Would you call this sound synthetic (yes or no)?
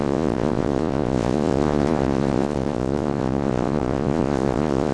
yes